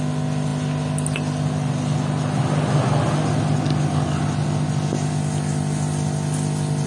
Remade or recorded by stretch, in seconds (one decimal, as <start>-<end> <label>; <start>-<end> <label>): 0.0-6.9 recorded